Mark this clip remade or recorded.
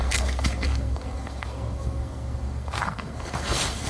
remade